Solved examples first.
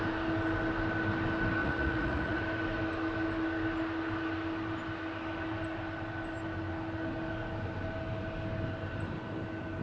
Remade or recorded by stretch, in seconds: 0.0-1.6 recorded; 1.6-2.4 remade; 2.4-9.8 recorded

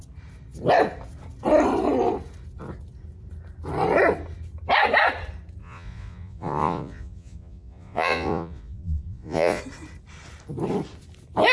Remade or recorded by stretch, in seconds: 0.0-5.6 recorded; 5.6-9.6 remade; 9.6-11.5 recorded

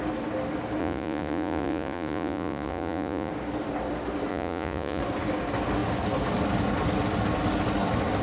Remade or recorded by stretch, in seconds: 0.0-0.8 recorded; 0.8-3.3 remade; 3.3-4.3 recorded; 4.3-5.0 remade; 5.0-8.2 recorded

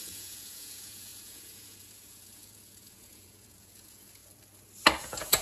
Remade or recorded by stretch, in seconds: 0.0-4.2 remade; 4.2-5.0 recorded; 5.0-5.4 remade

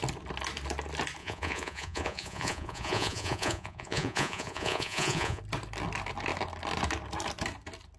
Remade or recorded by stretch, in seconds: 0.0-1.2 recorded; 1.2-5.4 remade; 5.4-8.0 recorded

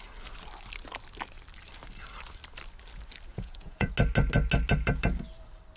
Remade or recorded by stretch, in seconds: 0.0-3.3 recorded; 3.3-3.9 remade; 3.9-5.8 recorded